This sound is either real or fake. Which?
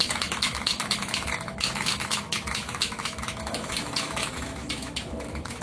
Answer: fake